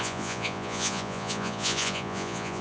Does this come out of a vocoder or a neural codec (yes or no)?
yes